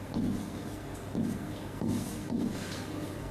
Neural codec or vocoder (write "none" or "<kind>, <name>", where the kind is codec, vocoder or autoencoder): codec, SNAC